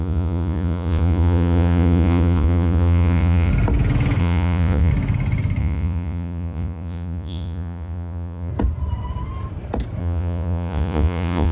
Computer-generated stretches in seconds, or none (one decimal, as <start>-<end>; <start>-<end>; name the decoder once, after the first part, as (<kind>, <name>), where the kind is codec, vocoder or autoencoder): 0.0-3.5 (vocoder, Vocos); 4.2-4.9; 5.6-8.5; 10.0-11.5